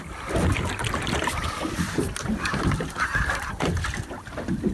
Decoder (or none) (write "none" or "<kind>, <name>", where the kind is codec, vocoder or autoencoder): vocoder, BigVGAN v2